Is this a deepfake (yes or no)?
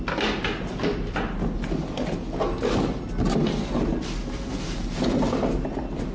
no